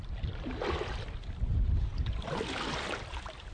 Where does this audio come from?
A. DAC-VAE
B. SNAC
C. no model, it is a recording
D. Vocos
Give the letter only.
C